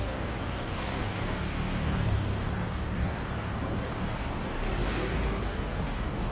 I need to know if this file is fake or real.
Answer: fake